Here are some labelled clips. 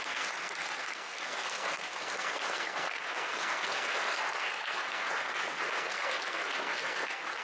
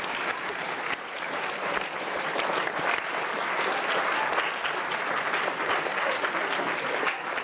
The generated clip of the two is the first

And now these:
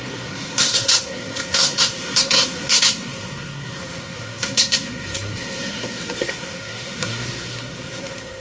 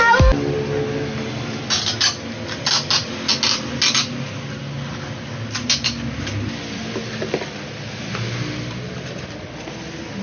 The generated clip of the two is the first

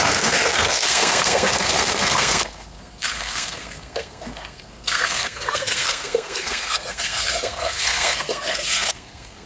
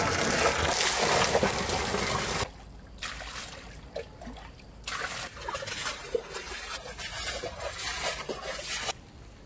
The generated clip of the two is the first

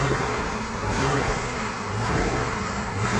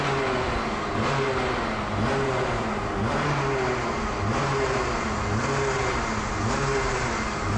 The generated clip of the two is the first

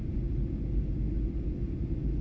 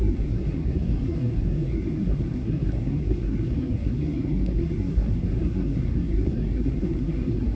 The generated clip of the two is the second